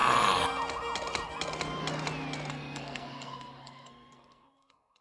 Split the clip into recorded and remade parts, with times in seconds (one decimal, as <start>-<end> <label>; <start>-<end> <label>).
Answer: 0.0-2.5 recorded; 2.5-5.0 remade